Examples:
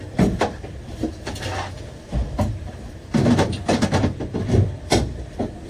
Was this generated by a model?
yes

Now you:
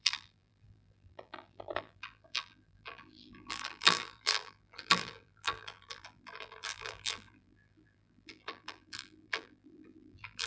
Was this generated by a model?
yes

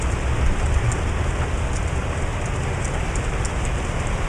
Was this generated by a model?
no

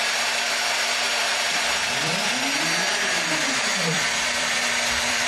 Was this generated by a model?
yes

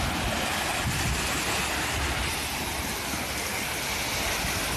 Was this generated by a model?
no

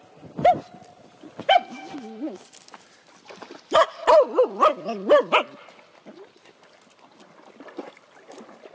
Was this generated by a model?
no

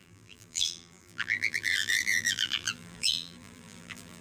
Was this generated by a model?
yes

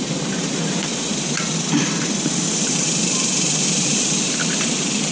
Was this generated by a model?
yes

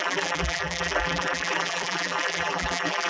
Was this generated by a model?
yes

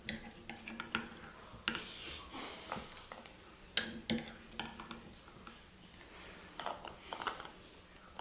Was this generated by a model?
no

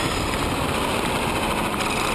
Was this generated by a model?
no